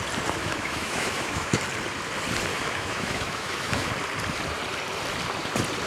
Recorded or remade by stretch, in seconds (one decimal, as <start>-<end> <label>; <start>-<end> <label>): 0.0-0.4 recorded; 0.4-1.6 remade; 1.6-2.5 recorded; 2.5-3.9 remade; 3.9-5.9 recorded